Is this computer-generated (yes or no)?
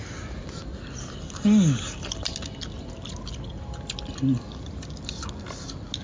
no